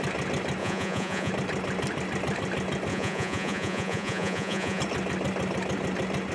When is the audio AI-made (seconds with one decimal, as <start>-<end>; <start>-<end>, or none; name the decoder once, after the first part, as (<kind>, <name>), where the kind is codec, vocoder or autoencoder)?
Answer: 0.6-1.3 (vocoder, Vocos); 2.9-4.8